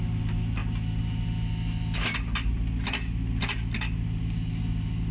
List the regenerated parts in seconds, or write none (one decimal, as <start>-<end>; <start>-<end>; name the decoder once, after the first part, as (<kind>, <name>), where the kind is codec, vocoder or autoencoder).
none